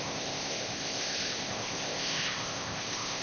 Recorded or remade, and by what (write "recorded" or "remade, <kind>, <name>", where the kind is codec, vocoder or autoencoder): remade, codec, ZipCodec